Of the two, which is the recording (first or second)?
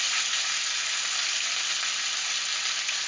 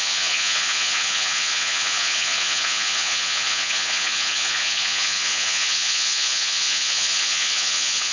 first